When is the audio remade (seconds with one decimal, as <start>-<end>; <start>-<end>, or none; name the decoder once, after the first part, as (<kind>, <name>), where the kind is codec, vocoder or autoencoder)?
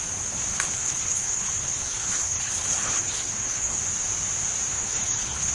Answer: 0.5-3.8 (codec, HILCodec); 4.7-5.5